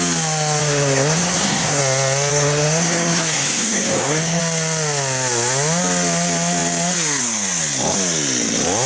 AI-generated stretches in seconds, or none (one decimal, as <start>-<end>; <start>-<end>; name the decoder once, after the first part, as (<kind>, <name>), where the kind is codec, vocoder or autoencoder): 0.6-1.8 (codec, SNAC); 2.3-4.4